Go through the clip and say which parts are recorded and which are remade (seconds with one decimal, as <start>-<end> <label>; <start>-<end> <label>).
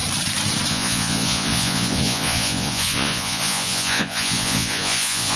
0.0-0.7 recorded; 0.7-5.4 remade